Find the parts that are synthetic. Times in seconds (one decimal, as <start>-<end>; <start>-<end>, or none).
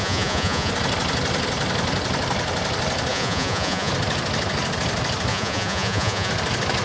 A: 0.0-0.7; 3.1-3.9; 5.3-6.3